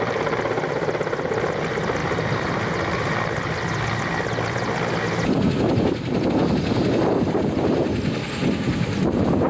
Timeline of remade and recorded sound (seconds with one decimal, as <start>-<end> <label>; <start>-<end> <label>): 0.0-9.5 recorded